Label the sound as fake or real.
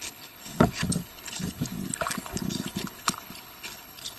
fake